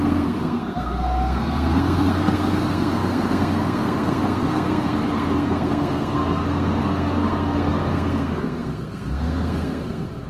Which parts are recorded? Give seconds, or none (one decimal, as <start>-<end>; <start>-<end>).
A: none